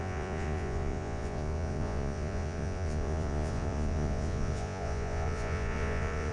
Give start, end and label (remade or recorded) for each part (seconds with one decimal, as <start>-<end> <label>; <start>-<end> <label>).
0.0-6.3 remade